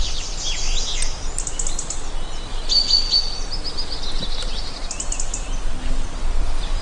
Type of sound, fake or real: real